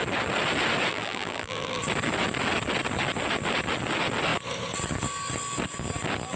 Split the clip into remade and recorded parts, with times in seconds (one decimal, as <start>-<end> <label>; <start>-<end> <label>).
0.0-0.9 recorded; 0.9-1.8 remade; 1.8-6.4 recorded